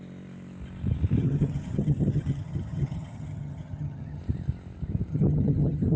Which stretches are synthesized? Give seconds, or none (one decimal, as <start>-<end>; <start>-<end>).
1.2-4.2; 5.1-6.0